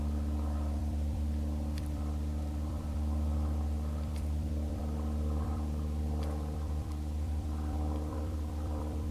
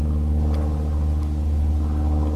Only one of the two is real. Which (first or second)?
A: second